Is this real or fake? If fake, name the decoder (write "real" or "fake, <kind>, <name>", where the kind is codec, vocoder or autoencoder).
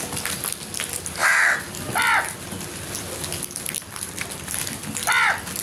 real